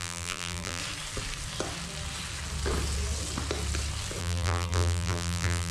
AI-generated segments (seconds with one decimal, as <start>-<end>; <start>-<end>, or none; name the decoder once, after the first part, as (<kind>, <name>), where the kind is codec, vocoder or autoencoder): 0.0-0.8 (vocoder, BigVGAN v2); 4.2-5.7